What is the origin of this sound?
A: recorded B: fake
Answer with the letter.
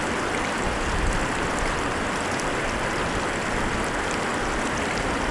A